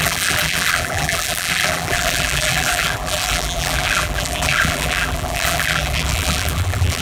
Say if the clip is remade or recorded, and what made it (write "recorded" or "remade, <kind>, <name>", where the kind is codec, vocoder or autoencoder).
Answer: remade, vocoder, BigVGAN v2